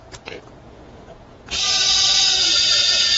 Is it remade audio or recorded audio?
remade